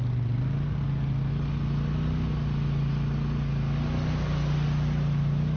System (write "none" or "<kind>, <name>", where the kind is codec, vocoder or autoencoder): none